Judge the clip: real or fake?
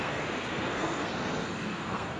fake